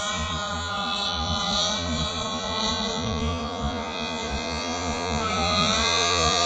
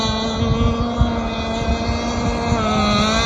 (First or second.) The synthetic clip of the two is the first